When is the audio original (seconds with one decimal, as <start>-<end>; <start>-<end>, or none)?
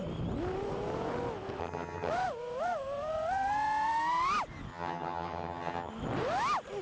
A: 0.0-1.6; 2.1-4.7; 5.9-6.8